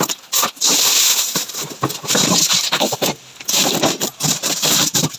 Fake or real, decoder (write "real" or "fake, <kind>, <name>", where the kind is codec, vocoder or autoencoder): real